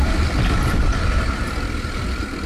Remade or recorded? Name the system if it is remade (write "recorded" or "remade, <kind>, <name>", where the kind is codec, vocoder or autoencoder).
recorded